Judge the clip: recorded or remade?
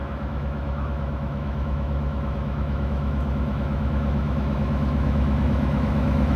remade